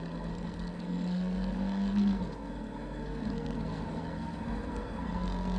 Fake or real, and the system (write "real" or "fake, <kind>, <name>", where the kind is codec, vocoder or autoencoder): fake, codec, SNAC